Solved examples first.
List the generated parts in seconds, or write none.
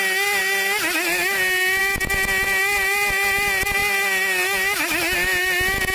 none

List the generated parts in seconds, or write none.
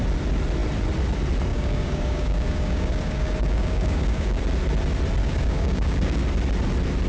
1.5-4.4 (codec, DAC); 5.2-6.2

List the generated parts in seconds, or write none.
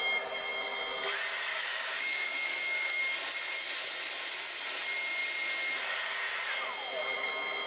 1.5-3.0 (codec, DAC)